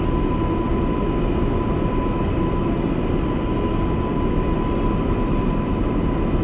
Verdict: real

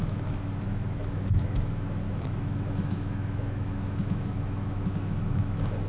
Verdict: fake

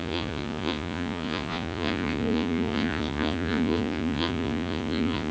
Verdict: fake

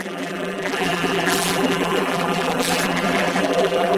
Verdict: fake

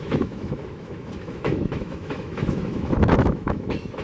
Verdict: fake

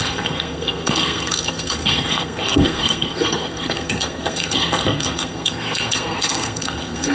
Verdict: fake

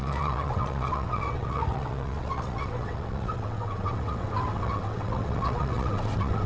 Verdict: fake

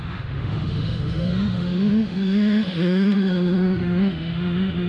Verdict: fake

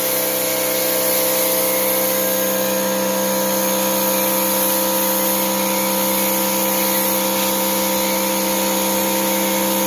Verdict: real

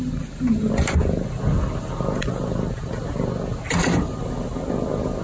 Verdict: real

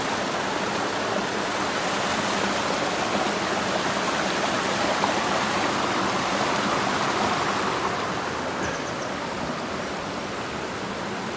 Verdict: real